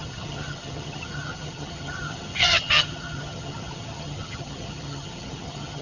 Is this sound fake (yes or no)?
yes